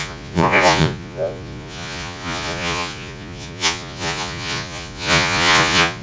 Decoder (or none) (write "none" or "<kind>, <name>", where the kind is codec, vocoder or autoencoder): vocoder, Vocos